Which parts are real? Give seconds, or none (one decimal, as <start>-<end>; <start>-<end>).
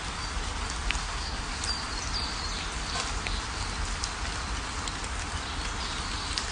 0.0-1.0; 1.6-6.5